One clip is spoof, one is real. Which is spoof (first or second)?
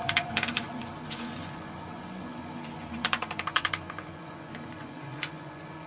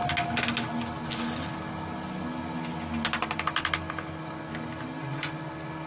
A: first